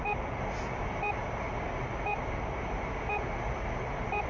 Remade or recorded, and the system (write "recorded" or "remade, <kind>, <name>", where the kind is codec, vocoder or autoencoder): recorded